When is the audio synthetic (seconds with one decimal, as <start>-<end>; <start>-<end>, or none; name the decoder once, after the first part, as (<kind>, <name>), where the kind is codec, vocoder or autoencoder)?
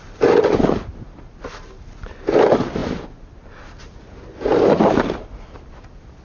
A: none